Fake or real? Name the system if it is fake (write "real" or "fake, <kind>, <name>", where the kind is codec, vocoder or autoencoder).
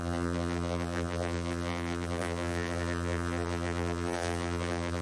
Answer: fake, vocoder, BigVGAN v2